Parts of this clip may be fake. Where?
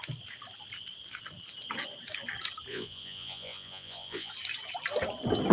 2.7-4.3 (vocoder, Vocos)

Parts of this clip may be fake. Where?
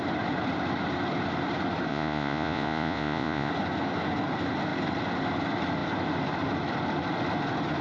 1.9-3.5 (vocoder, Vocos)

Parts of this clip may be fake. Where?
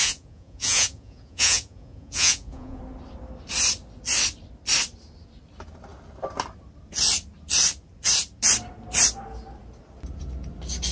0.0-2.8 (vocoder, Vocos)